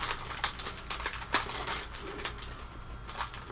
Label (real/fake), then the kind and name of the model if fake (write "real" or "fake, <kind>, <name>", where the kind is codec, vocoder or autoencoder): real